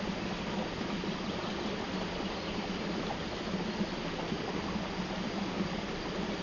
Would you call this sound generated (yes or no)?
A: no